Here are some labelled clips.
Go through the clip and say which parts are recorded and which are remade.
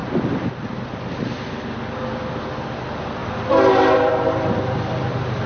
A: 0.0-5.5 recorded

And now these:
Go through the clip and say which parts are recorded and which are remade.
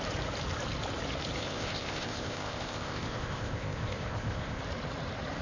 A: 0.0-1.4 recorded; 1.4-4.6 remade; 4.6-5.4 recorded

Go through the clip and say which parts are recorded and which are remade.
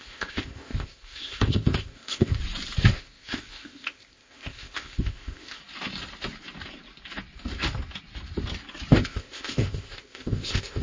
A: 0.0-2.4 remade; 2.4-2.9 recorded; 2.9-5.6 remade; 5.6-8.9 recorded; 8.9-10.8 remade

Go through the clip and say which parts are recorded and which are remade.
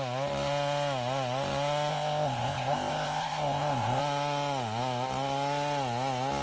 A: 0.0-1.9 recorded; 1.9-4.0 remade; 4.0-6.4 recorded